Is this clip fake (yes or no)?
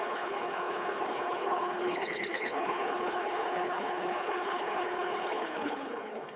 yes